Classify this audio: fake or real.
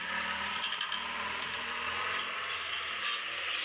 real